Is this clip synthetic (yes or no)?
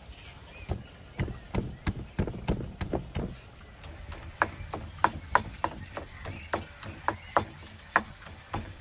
no